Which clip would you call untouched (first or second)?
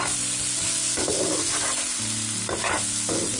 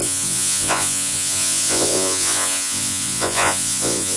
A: first